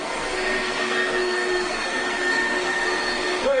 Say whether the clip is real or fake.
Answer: fake